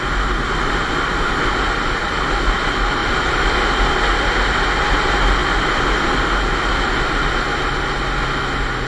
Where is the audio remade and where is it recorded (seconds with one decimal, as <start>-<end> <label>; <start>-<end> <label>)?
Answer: 0.0-3.0 recorded; 3.0-3.6 remade; 3.6-8.9 recorded